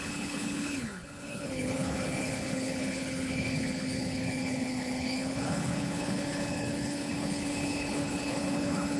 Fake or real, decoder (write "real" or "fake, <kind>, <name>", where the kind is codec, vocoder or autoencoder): fake, codec, HILCodec